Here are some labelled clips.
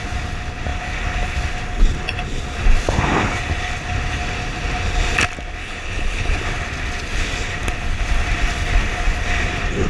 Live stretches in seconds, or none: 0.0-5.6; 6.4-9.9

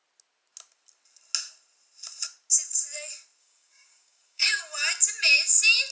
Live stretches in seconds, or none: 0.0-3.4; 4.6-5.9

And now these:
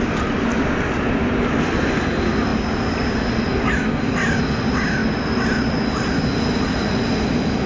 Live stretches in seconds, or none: 0.0-7.7